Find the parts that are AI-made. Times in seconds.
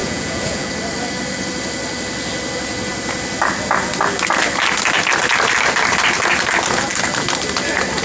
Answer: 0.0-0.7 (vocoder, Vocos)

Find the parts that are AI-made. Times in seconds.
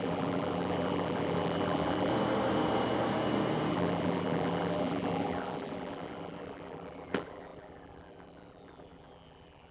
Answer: 0.0-2.1 (vocoder, BigVGAN v2); 3.7-9.7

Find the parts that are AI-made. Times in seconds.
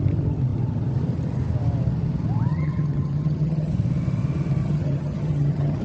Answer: 2.5-3.7 (vocoder, HiFi-GAN); 4.6-5.8